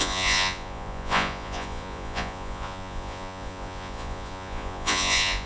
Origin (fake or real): fake